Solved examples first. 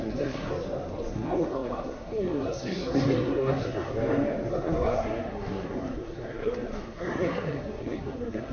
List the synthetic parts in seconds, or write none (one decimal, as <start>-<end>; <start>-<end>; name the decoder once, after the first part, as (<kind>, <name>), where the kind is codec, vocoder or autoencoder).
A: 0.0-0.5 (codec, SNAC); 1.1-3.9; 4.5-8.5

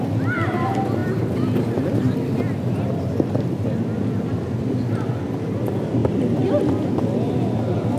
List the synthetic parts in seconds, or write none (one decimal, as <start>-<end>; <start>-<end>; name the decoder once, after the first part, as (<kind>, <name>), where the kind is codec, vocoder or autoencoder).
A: none

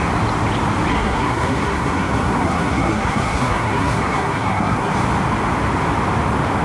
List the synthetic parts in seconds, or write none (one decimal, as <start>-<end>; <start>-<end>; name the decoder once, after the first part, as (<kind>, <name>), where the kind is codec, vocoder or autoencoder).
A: 0.9-4.9 (codec, SNAC)

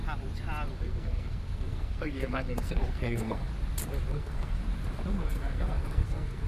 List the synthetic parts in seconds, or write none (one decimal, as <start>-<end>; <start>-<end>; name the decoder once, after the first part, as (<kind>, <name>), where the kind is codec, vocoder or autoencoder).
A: 0.7-3.5 (codec, SNAC); 4.1-4.6; 5.1-6.5

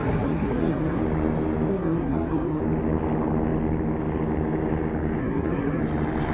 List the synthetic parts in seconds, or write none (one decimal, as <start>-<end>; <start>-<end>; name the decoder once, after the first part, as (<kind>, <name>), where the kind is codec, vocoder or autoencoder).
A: 0.0-1.0 (codec, SNAC); 1.7-2.6; 5.2-5.8

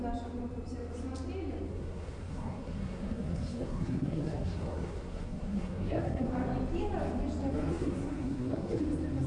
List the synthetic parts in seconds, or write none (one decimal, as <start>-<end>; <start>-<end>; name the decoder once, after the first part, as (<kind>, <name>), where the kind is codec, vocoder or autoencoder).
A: 1.7-6.3 (codec, SNAC); 7.7-8.8

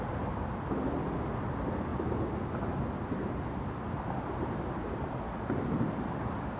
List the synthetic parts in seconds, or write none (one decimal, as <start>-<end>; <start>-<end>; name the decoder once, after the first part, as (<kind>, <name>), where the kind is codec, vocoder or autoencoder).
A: none